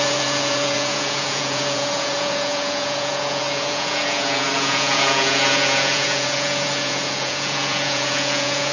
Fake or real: fake